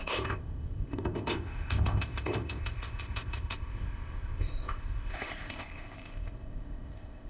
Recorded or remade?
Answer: remade